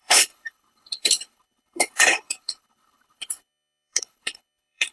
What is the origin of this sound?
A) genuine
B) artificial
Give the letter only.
B